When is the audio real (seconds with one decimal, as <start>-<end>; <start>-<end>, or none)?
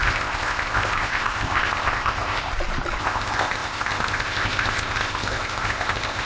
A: 2.5-3.0